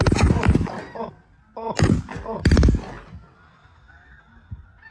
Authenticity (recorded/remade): recorded